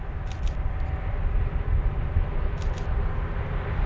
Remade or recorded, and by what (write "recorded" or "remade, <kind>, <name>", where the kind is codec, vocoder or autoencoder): recorded